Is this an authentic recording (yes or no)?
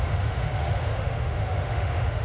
no